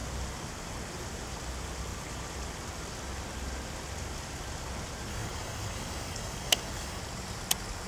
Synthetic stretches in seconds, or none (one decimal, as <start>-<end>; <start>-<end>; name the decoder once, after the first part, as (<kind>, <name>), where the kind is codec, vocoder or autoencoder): 5.1-7.0 (codec, DAC)